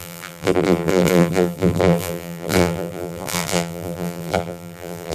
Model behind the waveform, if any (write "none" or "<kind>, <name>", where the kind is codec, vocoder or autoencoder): vocoder, BigVGAN v2